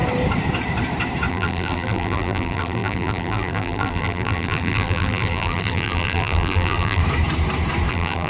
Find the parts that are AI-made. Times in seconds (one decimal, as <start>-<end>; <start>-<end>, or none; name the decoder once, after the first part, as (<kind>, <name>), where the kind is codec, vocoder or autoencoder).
1.3-7.0 (vocoder, BigVGAN v2); 7.9-8.3